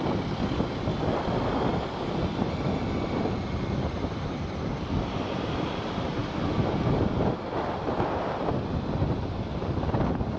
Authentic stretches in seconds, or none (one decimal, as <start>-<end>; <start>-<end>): 0.9-4.3

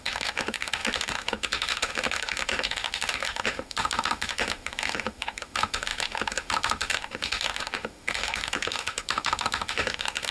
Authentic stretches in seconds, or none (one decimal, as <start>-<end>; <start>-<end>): none

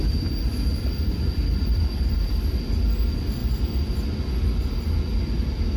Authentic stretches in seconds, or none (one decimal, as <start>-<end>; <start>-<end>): 0.0-0.7; 2.3-5.8

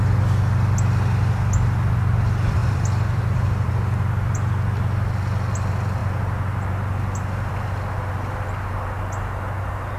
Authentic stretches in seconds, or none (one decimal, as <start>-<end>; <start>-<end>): 0.0-2.6; 3.7-10.0